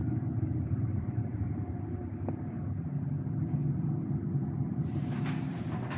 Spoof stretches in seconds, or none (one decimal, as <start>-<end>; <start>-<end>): 0.6-2.0; 4.7-6.0